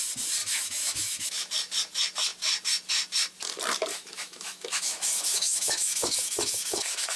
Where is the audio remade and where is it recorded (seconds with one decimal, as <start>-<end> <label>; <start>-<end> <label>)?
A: 0.0-0.4 recorded; 0.4-1.5 remade; 1.5-3.9 recorded; 3.9-7.2 remade